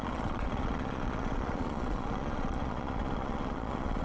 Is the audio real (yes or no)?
no